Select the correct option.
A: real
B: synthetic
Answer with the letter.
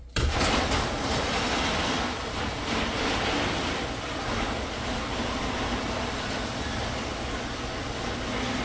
A